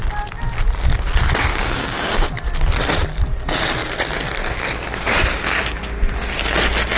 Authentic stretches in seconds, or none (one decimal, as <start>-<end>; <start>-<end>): 0.0-1.5; 2.3-7.0